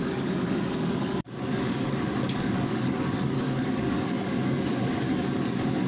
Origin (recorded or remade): remade